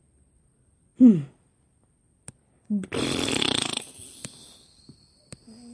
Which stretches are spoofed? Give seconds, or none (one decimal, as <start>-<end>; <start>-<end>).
none